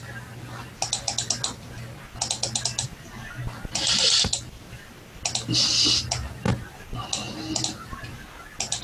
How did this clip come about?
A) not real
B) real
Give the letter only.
B